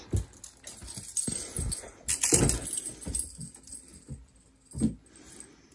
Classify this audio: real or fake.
real